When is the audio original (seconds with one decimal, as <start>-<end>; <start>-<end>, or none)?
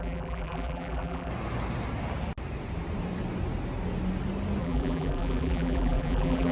1.3-4.6